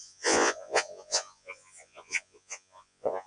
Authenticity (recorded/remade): remade